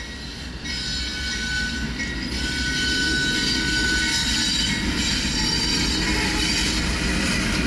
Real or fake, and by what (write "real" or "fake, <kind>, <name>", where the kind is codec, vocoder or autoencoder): real